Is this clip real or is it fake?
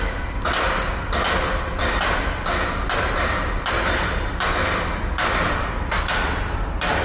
real